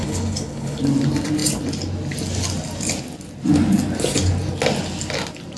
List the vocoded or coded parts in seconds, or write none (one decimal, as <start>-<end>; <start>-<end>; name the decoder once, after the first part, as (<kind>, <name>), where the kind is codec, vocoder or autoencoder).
0.0-0.8 (codec, HILCodec)